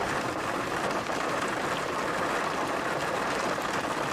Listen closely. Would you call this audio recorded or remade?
recorded